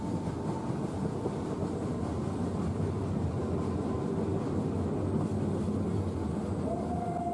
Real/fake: real